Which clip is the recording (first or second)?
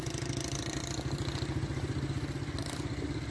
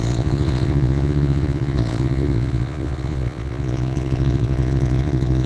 first